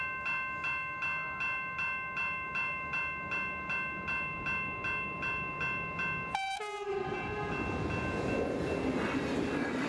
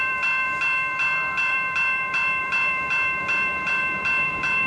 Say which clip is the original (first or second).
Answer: first